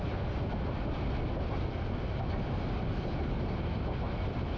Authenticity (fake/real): real